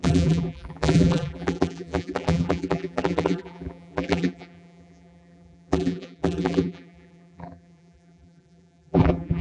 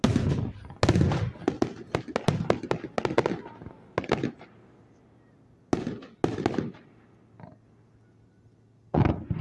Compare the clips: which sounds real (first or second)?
second